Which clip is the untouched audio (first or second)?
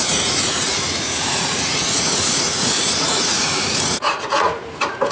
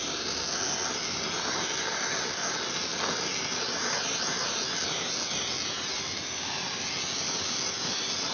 second